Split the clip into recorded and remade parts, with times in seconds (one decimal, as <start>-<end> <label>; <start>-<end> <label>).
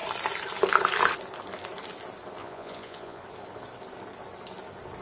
0.0-2.4 recorded; 2.4-3.2 remade; 3.2-5.0 recorded